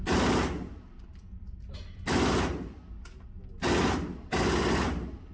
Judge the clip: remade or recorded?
recorded